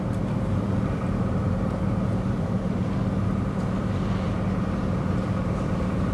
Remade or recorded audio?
remade